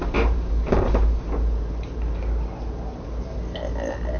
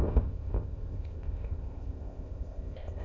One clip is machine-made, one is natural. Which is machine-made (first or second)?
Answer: second